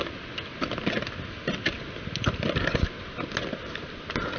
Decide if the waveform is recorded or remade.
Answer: recorded